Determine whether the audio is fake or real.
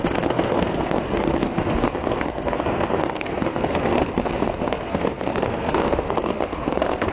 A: fake